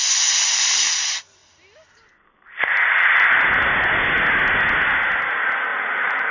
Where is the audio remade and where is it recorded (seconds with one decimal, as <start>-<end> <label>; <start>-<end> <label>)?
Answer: 0.0-5.7 recorded; 5.7-6.3 remade